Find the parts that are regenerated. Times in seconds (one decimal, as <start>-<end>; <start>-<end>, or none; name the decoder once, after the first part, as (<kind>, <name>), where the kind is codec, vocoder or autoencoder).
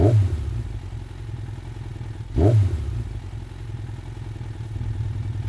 none